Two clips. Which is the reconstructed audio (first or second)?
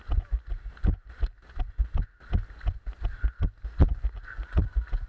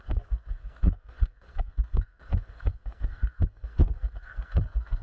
second